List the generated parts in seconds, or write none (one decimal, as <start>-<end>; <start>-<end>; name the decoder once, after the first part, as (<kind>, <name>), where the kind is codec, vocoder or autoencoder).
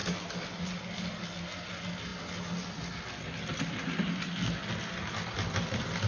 none